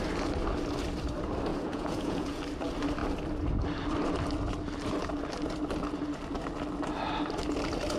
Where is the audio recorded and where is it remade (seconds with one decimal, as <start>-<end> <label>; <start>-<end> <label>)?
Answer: 0.0-1.5 recorded; 1.5-2.4 remade; 2.4-8.0 recorded